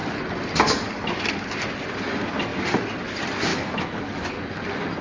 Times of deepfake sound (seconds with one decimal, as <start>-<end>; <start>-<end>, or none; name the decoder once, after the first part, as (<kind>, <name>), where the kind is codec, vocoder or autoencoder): 3.5-4.4 (autoencoder, DAC-VAE)